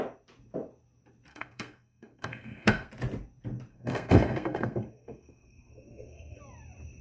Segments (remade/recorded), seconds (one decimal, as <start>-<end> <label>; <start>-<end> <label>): 0.0-1.3 recorded; 1.3-2.9 remade; 2.9-3.7 recorded; 3.7-6.4 remade; 6.4-7.0 recorded